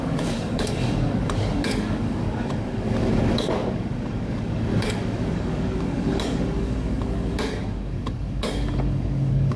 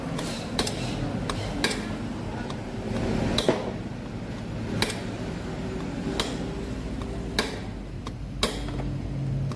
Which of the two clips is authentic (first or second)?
second